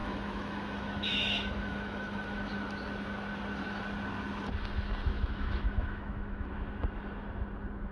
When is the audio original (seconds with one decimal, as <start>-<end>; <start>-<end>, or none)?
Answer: 2.5-5.1; 6.5-7.9